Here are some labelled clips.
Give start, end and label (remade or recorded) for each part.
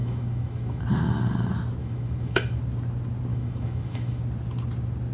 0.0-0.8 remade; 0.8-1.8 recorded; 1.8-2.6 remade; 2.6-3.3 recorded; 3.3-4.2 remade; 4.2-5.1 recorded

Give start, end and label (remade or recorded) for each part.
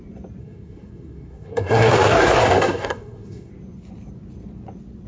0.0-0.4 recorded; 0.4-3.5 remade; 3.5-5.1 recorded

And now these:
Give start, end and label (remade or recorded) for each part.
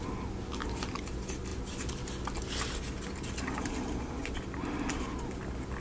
0.0-5.8 recorded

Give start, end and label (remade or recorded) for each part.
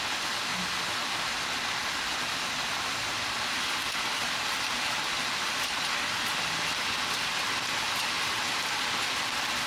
0.0-0.5 recorded; 0.5-4.5 remade; 4.5-9.7 recorded